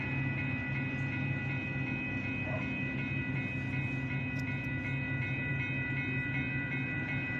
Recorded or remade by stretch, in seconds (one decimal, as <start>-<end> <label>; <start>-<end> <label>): 0.0-7.4 recorded